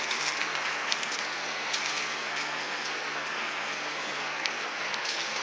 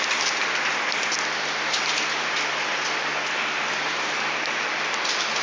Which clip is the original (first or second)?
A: second